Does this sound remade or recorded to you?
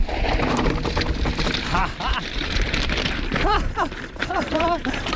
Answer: remade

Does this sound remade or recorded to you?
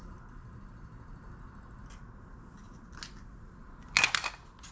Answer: recorded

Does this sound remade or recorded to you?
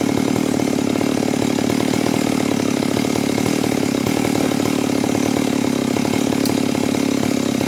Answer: recorded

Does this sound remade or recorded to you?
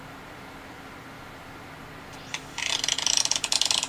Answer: recorded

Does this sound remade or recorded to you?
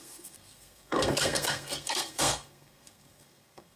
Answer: remade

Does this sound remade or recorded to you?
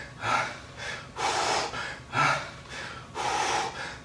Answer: recorded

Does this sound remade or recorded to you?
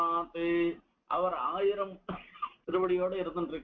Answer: recorded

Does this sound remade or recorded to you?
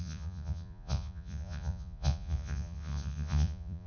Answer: remade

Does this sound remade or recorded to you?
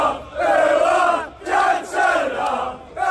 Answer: recorded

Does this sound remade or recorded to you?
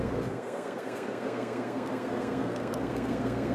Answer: remade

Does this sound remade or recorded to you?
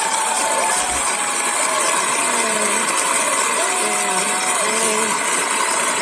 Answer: recorded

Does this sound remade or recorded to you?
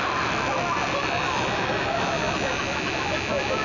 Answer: recorded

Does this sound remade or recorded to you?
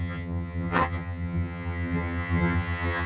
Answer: remade